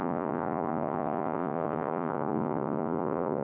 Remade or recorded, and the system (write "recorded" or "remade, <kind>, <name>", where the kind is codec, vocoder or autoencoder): remade, vocoder, Vocos